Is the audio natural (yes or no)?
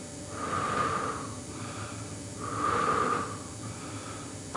no